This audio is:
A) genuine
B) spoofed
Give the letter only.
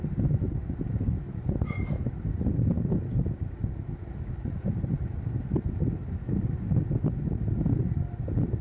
A